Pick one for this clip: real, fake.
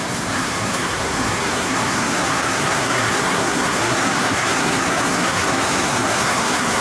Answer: fake